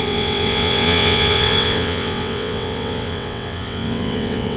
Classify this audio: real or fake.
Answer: fake